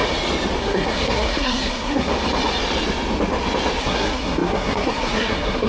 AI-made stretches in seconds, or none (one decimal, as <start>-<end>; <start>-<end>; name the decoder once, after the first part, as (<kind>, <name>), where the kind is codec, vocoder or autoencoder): 0.6-2.1 (codec, SNAC); 3.8-5.7